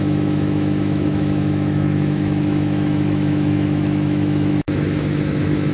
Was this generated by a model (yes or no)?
yes